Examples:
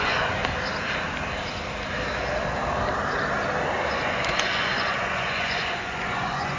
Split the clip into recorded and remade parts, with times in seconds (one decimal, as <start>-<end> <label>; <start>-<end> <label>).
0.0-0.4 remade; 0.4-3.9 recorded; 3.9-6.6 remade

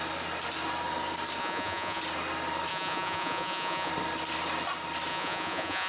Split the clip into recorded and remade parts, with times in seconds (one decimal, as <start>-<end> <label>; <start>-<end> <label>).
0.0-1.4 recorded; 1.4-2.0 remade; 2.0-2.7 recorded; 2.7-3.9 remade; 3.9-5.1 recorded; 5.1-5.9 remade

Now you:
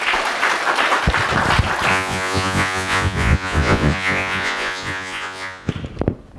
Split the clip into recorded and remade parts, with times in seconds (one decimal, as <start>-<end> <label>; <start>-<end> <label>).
0.0-1.9 recorded; 1.9-5.7 remade; 5.7-6.4 recorded

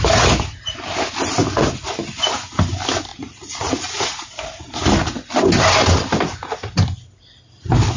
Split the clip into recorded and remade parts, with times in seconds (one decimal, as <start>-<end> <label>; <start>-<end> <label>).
0.0-3.1 recorded; 3.1-4.3 remade; 4.3-8.0 recorded

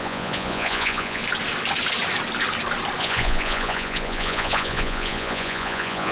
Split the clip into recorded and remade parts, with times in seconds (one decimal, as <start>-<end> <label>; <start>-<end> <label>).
0.0-1.2 remade; 1.2-3.0 recorded; 3.0-6.1 remade

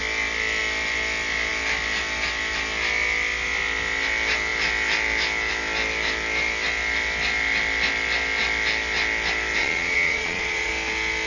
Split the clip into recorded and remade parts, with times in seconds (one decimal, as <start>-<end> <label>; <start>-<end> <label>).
0.0-9.6 recorded; 9.6-10.7 remade; 10.7-11.3 recorded

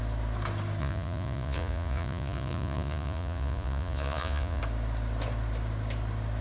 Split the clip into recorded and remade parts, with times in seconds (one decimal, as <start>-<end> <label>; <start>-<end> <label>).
0.0-0.8 recorded; 0.8-4.6 remade; 4.6-6.4 recorded